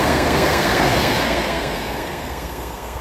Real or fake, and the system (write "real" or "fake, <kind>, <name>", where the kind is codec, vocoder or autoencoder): fake, codec, SNAC